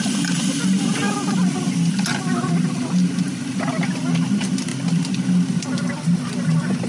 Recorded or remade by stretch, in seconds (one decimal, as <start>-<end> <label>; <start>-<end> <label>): 0.0-6.9 recorded